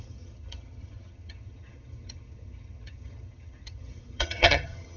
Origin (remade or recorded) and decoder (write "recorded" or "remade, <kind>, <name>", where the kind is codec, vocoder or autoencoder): remade, vocoder, HiFi-GAN